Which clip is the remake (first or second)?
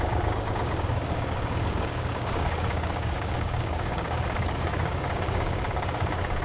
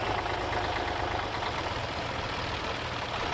first